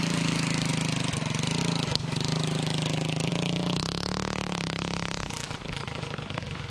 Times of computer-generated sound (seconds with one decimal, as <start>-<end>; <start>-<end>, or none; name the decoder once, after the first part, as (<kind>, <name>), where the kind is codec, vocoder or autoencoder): 0.0-0.7 (codec, DAC); 1.6-6.7